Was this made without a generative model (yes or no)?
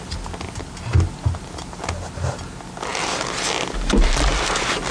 yes